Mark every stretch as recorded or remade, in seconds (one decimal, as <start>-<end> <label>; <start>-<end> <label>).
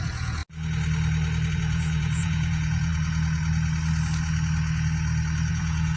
0.0-0.4 remade; 0.4-1.5 recorded; 1.5-2.9 remade; 2.9-5.5 recorded; 5.5-6.0 remade